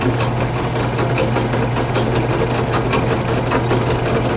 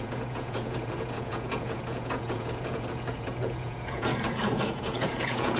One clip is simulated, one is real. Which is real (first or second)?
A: first